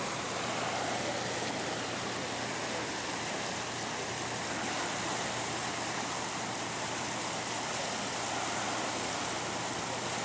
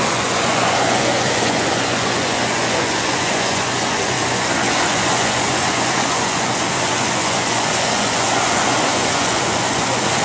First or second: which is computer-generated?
second